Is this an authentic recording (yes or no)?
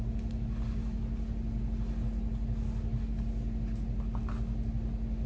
yes